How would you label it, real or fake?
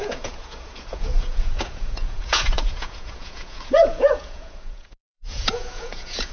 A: fake